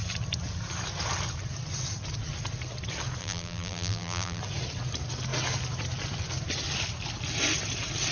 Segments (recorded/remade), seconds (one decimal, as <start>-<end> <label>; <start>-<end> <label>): 0.0-3.2 recorded; 3.2-4.4 remade; 4.4-8.1 recorded